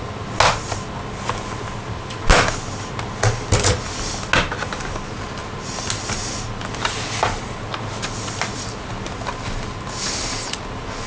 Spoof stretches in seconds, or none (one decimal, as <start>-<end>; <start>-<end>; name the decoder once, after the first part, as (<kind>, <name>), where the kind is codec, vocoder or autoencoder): none

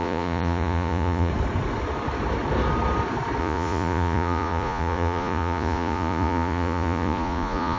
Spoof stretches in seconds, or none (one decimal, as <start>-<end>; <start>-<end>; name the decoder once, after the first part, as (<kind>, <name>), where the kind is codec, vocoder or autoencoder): 0.0-1.3 (vocoder, Vocos); 3.4-7.8

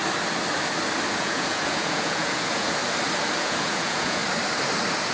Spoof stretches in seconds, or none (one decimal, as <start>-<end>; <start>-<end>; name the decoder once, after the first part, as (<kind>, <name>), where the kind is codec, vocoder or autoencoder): 1.2-2.8 (vocoder, Vocos); 3.4-4.2

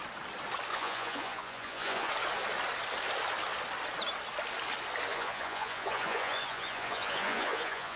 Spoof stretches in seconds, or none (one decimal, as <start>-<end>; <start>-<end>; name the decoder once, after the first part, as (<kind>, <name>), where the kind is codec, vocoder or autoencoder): 0.7-2.1 (vocoder, Vocos); 5.1-8.0

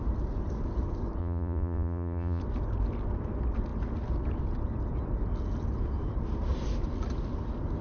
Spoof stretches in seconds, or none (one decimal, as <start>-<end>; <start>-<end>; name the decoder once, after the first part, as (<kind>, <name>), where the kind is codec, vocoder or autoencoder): 1.2-2.4 (vocoder, Vocos)